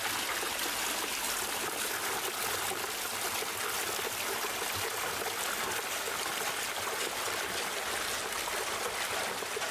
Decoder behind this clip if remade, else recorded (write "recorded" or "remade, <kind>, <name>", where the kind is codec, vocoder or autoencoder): recorded